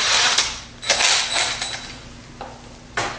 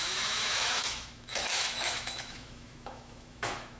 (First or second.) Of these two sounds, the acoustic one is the first